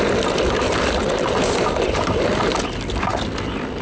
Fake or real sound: real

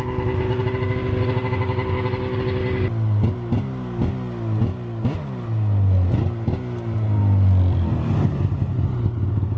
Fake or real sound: real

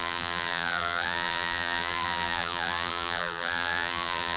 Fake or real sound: fake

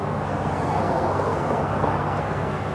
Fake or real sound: fake